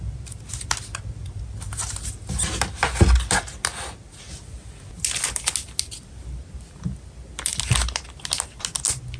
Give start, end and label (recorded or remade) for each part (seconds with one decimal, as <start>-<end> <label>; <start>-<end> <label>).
0.0-9.2 recorded

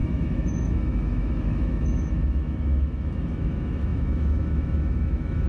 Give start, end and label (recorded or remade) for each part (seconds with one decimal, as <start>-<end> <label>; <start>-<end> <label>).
0.0-5.5 remade

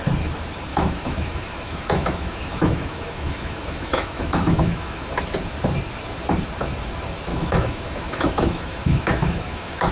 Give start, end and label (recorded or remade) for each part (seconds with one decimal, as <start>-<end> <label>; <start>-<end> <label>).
0.0-0.7 recorded; 0.7-5.2 remade; 5.2-7.3 recorded; 7.3-9.9 remade

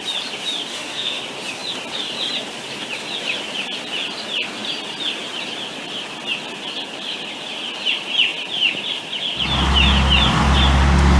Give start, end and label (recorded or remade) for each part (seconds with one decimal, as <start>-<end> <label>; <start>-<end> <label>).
0.0-0.7 recorded; 0.7-1.2 remade; 1.2-11.2 recorded

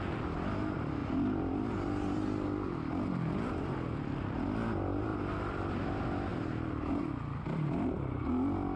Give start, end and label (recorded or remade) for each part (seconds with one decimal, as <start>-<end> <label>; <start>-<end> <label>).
0.0-8.8 recorded